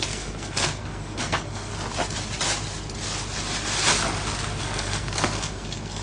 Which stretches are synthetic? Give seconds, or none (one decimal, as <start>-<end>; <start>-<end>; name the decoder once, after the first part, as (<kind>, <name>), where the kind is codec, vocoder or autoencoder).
0.0-1.7 (codec, SNAC); 4.6-6.0